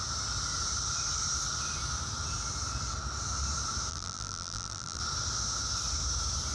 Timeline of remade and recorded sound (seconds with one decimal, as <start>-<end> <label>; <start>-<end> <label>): 0.0-3.9 recorded; 3.9-5.0 remade; 5.0-6.5 recorded